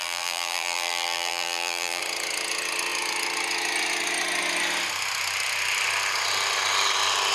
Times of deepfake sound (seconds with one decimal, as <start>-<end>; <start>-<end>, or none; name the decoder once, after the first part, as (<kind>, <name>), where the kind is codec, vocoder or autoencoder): 0.0-2.0 (vocoder, BigVGAN v2)